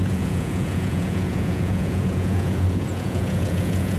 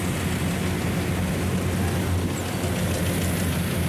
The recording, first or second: second